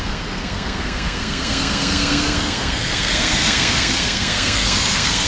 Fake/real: fake